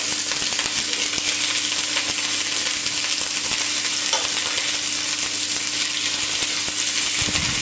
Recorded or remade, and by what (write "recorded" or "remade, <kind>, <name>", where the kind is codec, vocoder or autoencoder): recorded